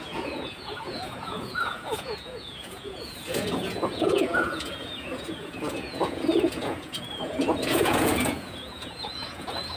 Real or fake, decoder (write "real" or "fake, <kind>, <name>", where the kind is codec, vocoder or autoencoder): fake, vocoder, Vocos